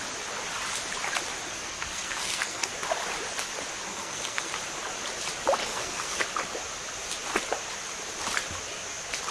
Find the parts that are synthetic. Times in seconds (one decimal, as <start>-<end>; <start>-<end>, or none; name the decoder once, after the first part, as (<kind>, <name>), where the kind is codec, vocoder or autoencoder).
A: 1.5-2.7 (codec, SNAC); 3.9-4.5; 5.6-6.2